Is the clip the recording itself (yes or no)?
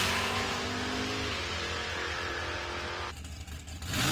yes